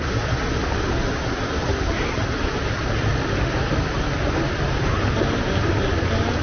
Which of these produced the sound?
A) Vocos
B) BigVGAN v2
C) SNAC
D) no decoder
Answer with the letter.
D